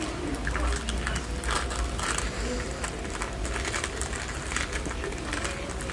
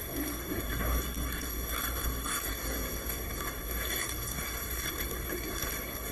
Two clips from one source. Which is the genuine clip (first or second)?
first